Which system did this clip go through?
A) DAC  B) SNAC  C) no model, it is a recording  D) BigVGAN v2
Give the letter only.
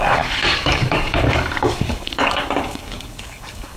A